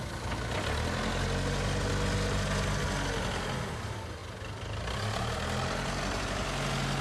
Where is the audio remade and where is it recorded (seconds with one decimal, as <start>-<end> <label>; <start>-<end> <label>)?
0.0-7.0 recorded